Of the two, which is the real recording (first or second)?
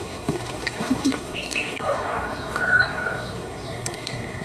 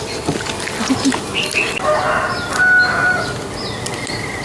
second